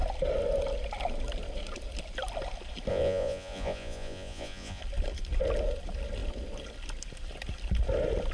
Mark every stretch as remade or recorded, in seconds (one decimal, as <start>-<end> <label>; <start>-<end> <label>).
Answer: 0.0-2.9 recorded; 2.9-4.8 remade; 4.8-8.3 recorded